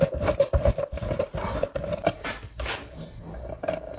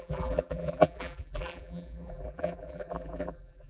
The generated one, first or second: second